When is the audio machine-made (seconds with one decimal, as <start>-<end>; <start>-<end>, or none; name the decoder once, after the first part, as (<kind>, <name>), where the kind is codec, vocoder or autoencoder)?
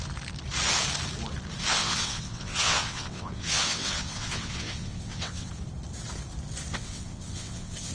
1.7-5.5 (vocoder, WaveNeXt); 6.7-7.9